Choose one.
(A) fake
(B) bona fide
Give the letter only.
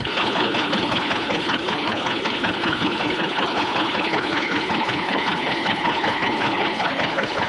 A